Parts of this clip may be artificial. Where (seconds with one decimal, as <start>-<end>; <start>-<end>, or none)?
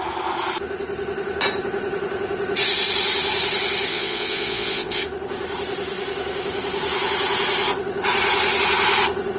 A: 3.9-5.0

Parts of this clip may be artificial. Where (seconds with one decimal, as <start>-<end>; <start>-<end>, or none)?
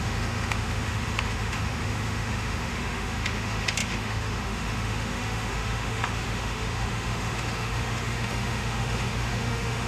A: 0.0-9.9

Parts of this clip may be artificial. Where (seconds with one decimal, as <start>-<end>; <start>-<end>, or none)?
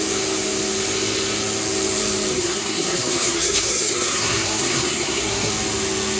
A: 2.3-5.5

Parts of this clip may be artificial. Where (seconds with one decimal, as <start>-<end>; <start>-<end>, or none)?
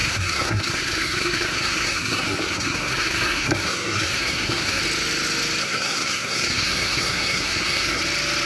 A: 0.0-4.8; 5.6-8.0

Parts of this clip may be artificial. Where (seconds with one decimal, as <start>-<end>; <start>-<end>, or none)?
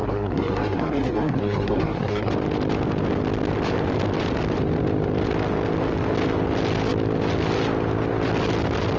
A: 0.0-2.3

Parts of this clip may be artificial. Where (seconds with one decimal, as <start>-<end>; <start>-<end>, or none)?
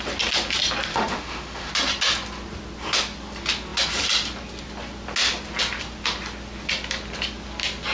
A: 0.9-1.7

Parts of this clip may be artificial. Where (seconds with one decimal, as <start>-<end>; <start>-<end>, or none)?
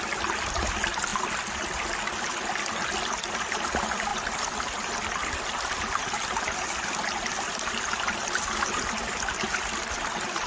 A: none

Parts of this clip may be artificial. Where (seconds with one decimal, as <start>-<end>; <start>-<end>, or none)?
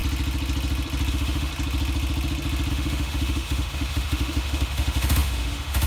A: 1.1-1.5; 2.7-5.9